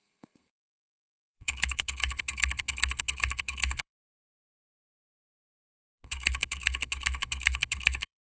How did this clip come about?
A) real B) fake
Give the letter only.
B